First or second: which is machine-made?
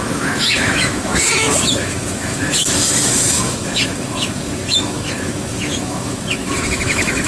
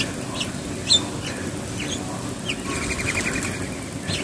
first